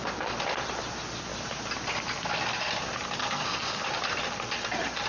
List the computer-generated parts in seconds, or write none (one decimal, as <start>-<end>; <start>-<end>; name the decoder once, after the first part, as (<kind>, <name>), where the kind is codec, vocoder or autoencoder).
3.2-3.9 (codec, SNAC)